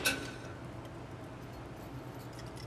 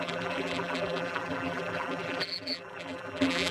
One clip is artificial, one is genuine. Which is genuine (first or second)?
first